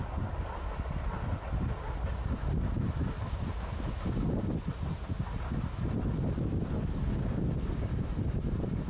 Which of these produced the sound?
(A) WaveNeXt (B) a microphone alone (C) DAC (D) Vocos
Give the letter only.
B